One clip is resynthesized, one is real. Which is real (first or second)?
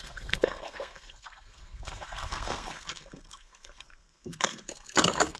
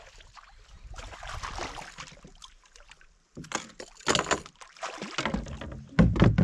second